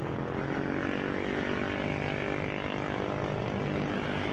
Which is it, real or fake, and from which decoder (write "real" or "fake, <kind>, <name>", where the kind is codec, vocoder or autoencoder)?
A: real